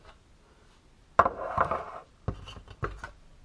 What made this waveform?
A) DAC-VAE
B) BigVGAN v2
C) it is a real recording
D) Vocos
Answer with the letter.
C